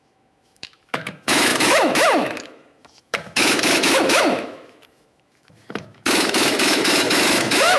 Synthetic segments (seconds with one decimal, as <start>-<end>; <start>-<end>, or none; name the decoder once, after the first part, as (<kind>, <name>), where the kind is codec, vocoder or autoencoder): 0.0-7.8 (autoencoder, DAC-VAE)